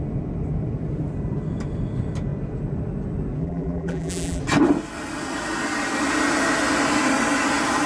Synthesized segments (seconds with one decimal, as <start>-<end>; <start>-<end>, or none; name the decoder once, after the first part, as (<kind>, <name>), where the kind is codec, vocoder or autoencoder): 3.4-4.4 (vocoder, BigVGAN v2)